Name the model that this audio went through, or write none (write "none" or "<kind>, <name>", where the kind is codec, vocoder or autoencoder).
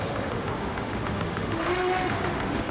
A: autoencoder, DAC-VAE